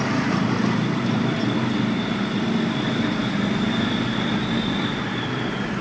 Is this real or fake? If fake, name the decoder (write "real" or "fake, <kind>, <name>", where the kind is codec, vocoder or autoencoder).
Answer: real